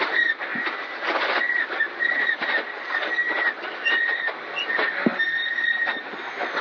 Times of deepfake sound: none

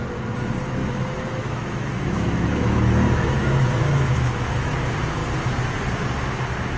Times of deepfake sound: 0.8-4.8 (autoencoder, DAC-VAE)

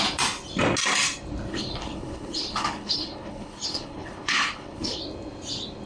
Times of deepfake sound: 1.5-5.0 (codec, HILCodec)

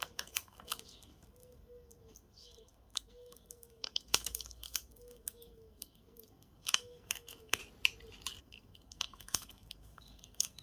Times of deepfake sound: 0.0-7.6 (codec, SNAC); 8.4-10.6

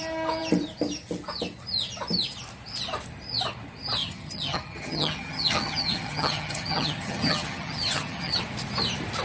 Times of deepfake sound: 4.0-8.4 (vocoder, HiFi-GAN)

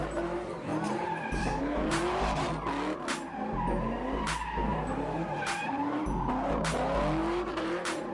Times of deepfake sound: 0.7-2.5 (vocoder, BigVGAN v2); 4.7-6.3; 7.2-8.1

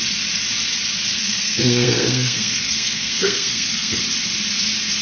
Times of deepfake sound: 1.2-4.0 (codec, SNAC)

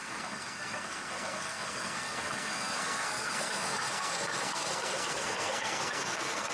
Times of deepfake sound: 0.0-6.5 (codec, SNAC)